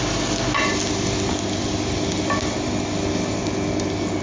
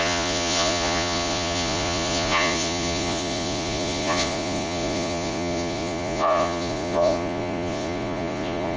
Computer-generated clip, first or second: second